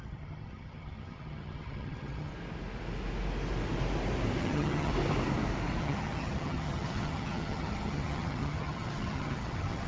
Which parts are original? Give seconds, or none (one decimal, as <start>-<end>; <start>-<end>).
2.3-4.4; 4.9-5.8

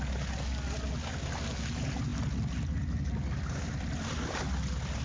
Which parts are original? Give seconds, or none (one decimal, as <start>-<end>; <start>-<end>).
0.0-5.0

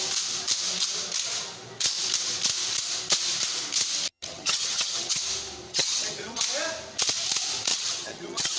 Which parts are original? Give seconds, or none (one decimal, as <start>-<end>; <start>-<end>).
0.0-4.1; 5.2-5.7; 6.4-7.7

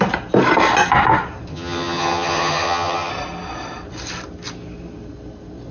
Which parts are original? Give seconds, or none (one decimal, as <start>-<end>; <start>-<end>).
0.0-1.5; 3.1-5.7